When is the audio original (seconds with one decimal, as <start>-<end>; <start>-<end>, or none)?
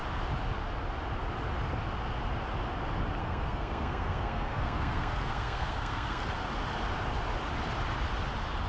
0.0-3.2; 6.3-8.7